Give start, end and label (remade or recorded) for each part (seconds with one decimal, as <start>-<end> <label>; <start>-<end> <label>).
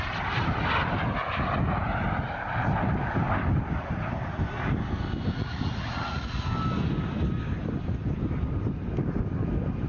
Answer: 0.0-5.4 recorded; 5.4-6.4 remade; 6.4-9.9 recorded